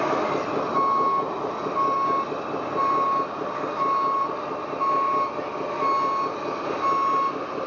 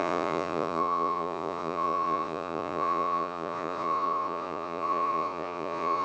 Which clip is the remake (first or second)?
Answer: second